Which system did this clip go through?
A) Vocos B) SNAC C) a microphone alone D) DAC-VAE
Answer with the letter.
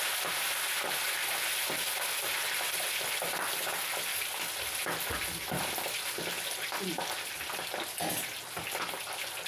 C